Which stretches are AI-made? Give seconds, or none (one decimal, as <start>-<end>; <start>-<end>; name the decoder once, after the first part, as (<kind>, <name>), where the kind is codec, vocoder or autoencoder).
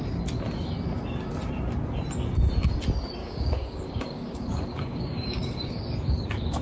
3.2-5.8 (codec, DAC)